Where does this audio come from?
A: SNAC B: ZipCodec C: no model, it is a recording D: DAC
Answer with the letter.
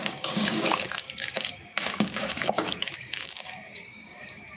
D